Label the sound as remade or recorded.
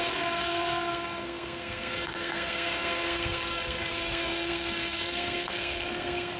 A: remade